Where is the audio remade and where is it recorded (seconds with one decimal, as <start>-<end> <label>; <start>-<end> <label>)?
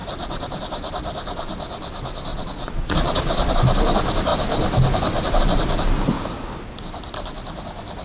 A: 0.0-0.6 remade; 0.6-2.3 recorded; 2.3-3.5 remade; 3.5-8.0 recorded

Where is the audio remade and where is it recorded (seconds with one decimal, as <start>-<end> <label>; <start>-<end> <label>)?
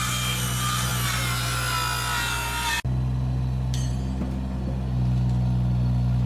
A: 0.0-6.3 recorded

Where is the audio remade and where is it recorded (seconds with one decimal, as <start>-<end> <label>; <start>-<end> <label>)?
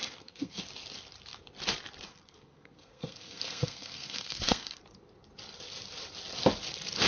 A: 0.0-0.6 remade; 0.6-2.1 recorded; 2.1-4.8 remade; 4.8-7.1 recorded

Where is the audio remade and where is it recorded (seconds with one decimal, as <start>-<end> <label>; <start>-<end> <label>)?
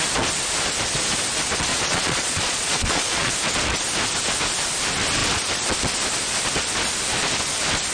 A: 0.0-1.7 recorded; 1.7-3.3 remade; 3.3-7.9 recorded